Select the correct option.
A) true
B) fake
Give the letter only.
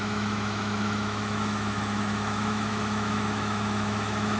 B